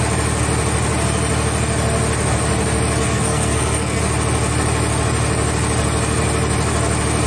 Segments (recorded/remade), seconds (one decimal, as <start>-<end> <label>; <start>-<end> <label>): 0.0-3.0 recorded; 3.0-4.0 remade; 4.0-7.3 recorded